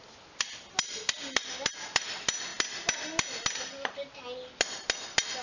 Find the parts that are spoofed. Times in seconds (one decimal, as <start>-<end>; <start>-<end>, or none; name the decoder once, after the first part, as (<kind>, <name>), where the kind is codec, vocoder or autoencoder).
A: none